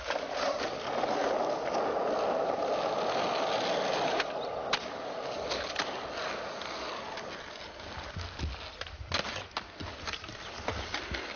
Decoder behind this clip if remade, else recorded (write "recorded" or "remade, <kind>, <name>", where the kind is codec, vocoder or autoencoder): recorded